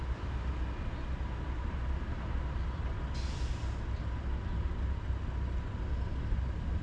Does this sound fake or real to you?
real